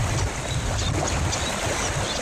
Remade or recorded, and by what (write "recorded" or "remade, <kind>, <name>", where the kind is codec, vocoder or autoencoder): recorded